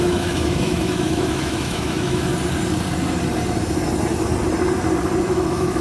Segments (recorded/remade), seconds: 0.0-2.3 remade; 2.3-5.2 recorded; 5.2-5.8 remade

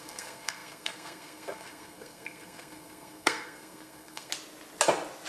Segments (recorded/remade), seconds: 0.0-4.3 remade; 4.3-5.3 recorded

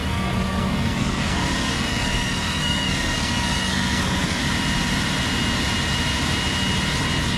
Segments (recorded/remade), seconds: 0.0-4.4 remade; 4.4-7.4 recorded